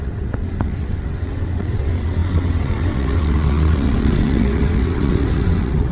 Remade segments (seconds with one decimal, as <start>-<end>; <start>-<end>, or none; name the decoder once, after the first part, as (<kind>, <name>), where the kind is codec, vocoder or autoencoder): 0.0-5.9 (vocoder, WaveNeXt)